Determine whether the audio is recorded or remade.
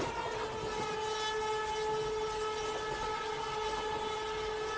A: recorded